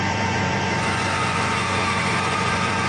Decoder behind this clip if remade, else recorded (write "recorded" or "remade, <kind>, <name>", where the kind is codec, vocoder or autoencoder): remade, vocoder, Vocos